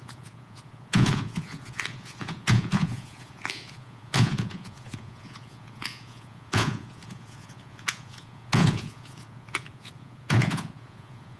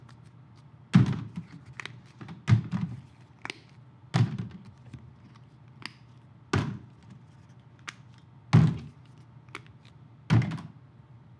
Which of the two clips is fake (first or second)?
first